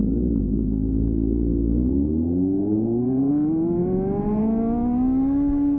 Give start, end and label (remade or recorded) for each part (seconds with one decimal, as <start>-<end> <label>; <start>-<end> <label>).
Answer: 0.0-0.4 recorded; 0.4-3.3 remade; 3.3-5.8 recorded